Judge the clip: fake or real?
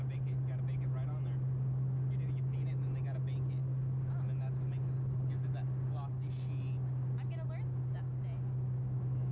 real